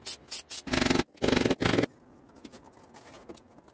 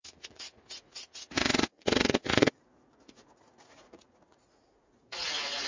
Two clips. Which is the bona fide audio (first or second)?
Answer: first